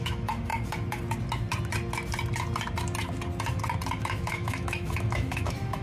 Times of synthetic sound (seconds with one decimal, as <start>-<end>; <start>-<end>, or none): 0.0-0.5; 4.0-5.8